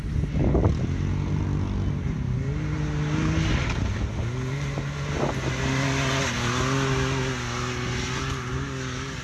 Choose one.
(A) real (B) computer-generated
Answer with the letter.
A